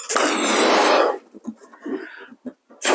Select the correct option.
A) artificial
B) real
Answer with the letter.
B